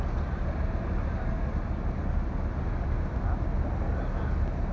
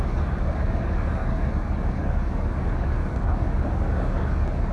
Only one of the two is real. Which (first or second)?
first